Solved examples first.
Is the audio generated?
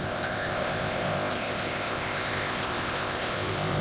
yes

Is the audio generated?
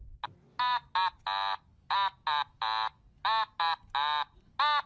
no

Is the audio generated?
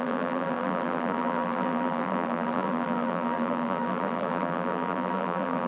yes